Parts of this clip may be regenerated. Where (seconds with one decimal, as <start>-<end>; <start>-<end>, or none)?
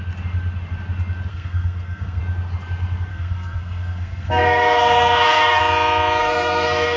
1.3-2.2; 3.1-5.6; 6.2-7.0